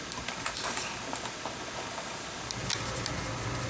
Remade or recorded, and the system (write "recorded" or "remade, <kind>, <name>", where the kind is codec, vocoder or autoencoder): recorded